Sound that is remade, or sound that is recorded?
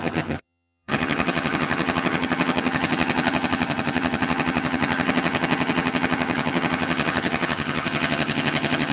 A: remade